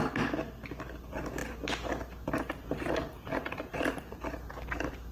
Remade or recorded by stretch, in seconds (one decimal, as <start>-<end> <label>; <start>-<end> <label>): 0.0-5.1 recorded